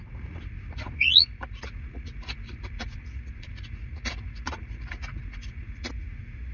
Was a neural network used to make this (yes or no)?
yes